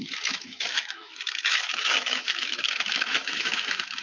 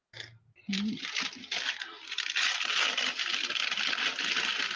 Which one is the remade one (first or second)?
first